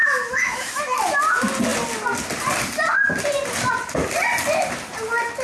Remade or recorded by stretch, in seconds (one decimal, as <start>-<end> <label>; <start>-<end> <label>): 0.0-0.8 remade; 0.8-5.4 recorded